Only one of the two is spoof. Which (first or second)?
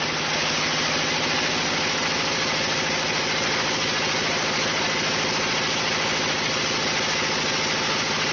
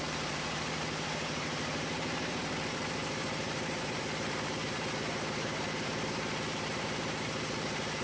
second